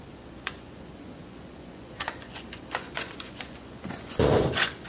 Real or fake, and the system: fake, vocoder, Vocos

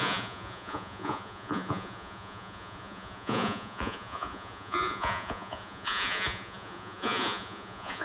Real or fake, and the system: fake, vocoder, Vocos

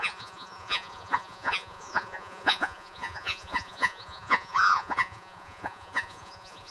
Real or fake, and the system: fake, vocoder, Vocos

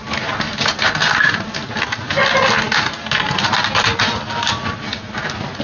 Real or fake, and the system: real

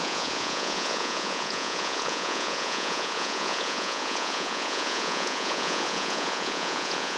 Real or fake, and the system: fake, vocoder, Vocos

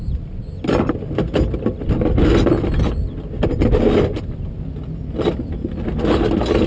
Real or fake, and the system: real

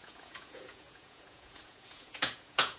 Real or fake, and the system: fake, vocoder, Vocos